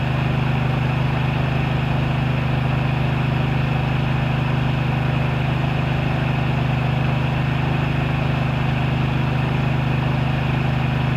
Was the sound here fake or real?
real